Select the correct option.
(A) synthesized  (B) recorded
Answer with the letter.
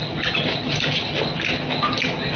B